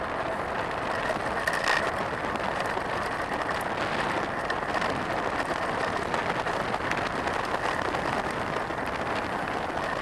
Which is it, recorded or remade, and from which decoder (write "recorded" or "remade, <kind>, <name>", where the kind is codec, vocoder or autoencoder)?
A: recorded